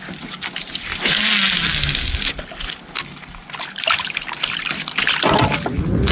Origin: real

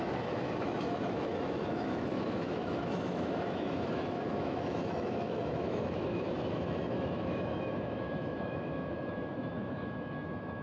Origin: fake